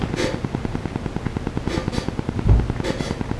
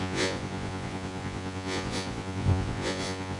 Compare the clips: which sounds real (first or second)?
first